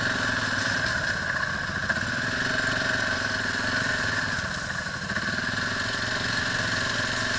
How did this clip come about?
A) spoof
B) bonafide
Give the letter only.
B